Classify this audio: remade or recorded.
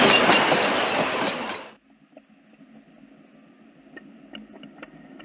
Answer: recorded